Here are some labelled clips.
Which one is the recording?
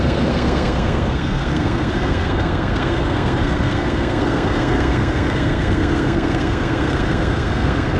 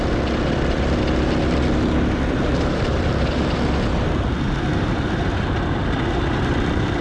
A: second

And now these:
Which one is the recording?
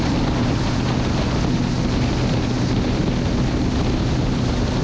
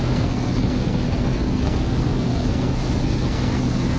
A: first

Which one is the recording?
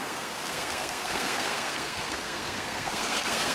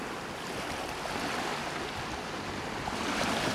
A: second